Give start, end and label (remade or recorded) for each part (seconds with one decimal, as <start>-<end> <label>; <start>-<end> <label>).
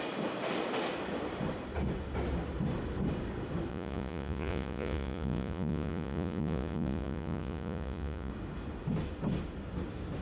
0.0-3.7 recorded; 3.7-8.3 remade; 8.3-10.2 recorded